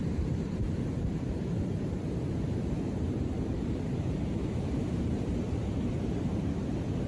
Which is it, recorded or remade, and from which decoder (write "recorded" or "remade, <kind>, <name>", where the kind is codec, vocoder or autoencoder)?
remade, vocoder, BigVGAN v2